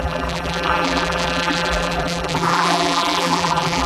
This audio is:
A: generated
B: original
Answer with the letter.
A